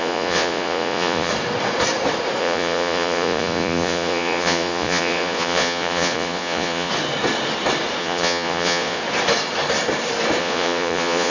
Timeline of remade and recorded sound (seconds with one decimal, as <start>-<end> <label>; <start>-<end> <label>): 0.0-1.3 remade; 1.3-2.4 recorded; 2.4-6.9 remade; 6.9-8.0 recorded; 8.0-9.0 remade; 9.0-10.4 recorded; 10.4-11.3 remade